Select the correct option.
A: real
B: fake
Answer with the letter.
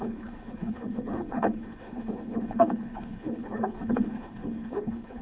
B